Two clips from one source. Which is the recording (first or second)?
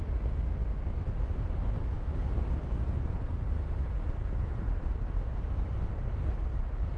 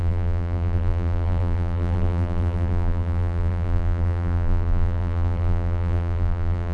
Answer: first